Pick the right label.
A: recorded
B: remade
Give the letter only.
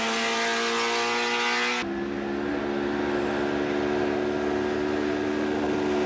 A